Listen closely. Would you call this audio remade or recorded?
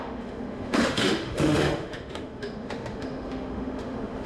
remade